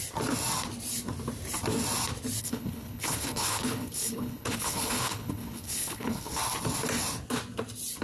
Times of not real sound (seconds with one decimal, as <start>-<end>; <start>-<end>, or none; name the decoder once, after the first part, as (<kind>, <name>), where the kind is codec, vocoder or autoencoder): 2.4-6.4 (codec, HILCodec)